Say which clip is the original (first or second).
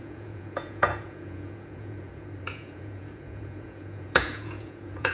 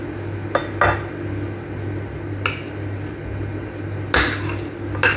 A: second